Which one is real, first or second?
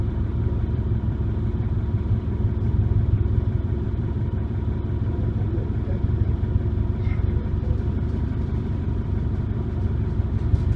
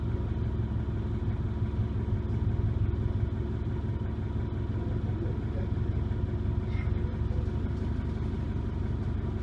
second